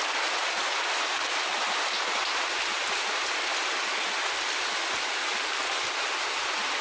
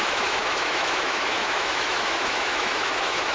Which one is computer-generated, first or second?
second